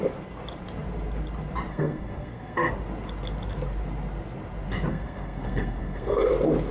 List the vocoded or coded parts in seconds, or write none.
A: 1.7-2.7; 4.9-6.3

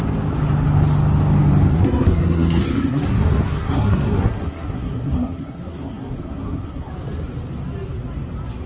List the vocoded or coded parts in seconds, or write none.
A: 1.7-6.9

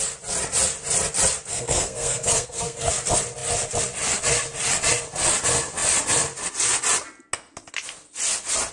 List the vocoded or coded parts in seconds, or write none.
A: 1.5-2.9

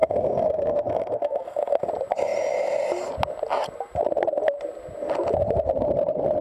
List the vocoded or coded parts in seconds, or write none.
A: 0.0-1.9